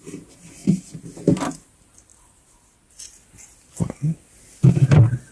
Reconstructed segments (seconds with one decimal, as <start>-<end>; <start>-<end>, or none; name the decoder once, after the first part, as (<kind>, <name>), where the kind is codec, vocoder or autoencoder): 0.0-0.6 (vocoder, BigVGAN v2); 1.7-2.1